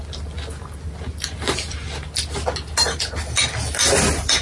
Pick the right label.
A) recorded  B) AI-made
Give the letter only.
A